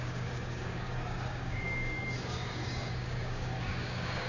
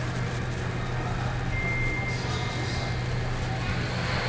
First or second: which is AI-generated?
first